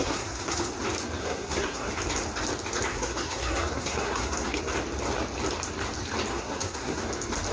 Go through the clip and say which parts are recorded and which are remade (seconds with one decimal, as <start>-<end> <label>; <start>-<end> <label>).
0.0-0.7 remade; 0.7-1.2 recorded; 1.2-1.9 remade; 1.9-2.9 recorded; 2.9-4.6 remade; 4.6-6.3 recorded; 6.3-7.0 remade; 7.0-7.5 recorded